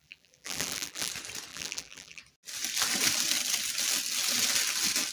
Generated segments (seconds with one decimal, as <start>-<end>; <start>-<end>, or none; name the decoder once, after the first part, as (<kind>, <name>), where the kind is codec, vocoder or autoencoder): 0.0-1.1 (vocoder, BigVGAN v2); 1.5-2.2